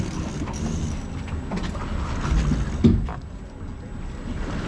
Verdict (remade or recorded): recorded